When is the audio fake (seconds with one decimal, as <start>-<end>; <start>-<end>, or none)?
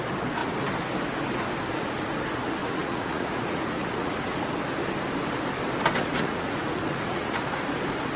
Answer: 2.6-4.5; 6.0-7.7